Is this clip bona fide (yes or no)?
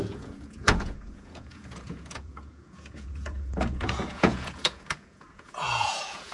no